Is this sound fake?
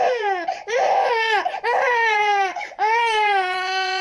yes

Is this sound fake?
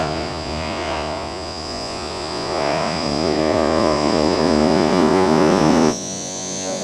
yes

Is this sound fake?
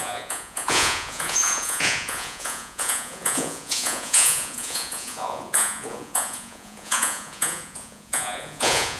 yes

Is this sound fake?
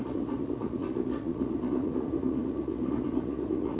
yes